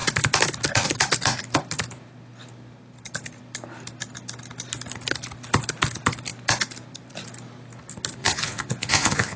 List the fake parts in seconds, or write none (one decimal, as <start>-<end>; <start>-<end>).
8.2-9.4